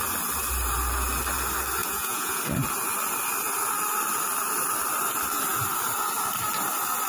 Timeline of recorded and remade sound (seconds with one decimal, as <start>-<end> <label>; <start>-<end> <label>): 0.0-1.8 recorded; 1.8-2.4 remade; 2.4-7.1 recorded